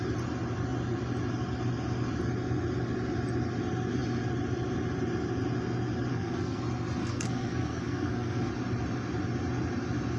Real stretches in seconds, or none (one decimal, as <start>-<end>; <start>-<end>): 0.0-6.1; 6.6-7.0; 8.5-10.2